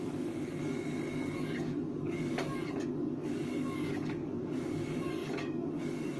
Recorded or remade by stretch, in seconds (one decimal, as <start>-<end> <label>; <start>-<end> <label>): 0.0-6.2 remade